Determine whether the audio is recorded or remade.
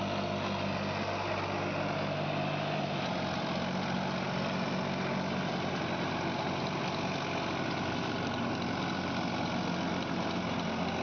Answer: recorded